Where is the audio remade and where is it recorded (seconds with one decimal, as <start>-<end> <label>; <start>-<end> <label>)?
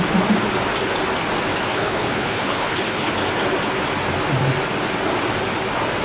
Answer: 0.0-1.7 recorded; 1.7-3.1 remade; 3.1-6.0 recorded